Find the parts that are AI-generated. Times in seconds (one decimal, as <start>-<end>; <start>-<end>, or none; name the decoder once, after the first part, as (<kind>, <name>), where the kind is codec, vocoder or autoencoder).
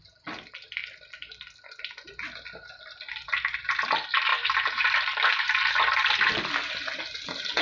4.3-6.2 (vocoder, BigVGAN v2)